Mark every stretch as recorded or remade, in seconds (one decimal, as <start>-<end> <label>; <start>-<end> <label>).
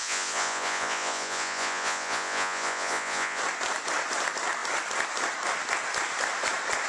0.0-3.4 remade; 3.4-6.9 recorded